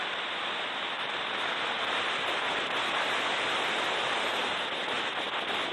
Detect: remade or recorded recorded